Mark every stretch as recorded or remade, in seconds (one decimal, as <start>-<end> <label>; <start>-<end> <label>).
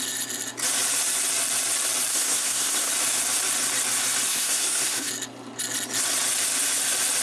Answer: 0.0-2.1 recorded; 2.1-2.9 remade; 2.9-4.3 recorded; 4.3-5.1 remade; 5.1-7.2 recorded